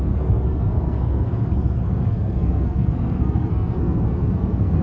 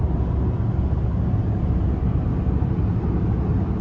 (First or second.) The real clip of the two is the second